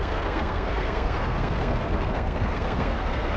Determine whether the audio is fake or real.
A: fake